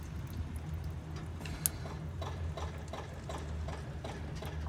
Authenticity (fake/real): real